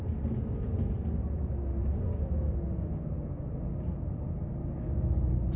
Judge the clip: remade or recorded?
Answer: recorded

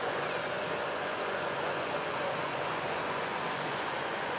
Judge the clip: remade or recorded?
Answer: remade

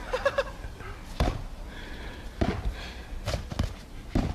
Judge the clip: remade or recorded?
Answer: recorded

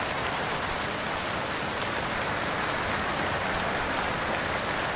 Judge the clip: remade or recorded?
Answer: remade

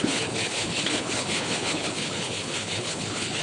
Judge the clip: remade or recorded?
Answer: remade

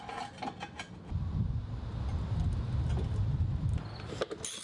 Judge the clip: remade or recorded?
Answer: recorded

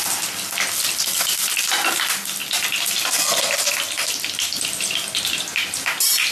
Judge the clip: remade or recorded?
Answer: recorded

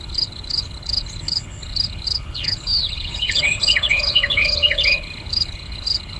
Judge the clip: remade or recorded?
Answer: remade